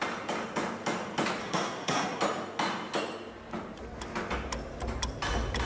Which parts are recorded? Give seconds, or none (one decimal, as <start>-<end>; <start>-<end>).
0.0-1.4; 2.2-5.7